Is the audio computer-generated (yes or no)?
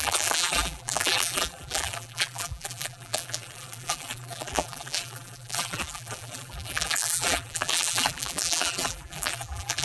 yes